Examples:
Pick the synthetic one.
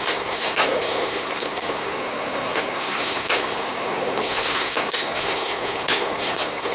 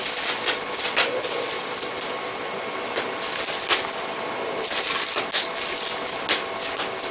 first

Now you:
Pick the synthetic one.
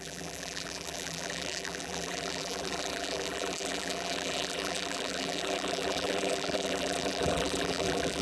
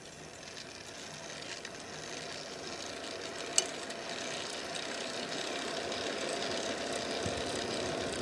first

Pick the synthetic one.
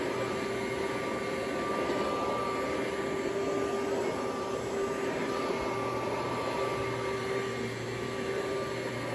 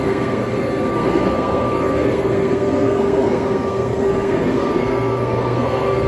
second